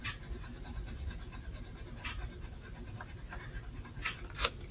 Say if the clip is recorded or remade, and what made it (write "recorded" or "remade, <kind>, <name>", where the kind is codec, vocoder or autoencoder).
recorded